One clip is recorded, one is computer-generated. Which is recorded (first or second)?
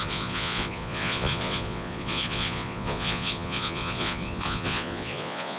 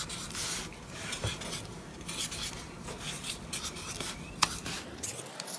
second